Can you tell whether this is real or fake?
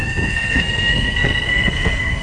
fake